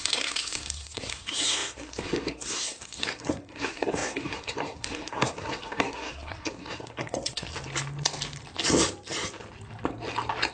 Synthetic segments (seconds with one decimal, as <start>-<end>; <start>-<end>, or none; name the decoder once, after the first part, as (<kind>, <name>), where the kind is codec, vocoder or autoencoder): 0.0-7.5 (codec, SNAC)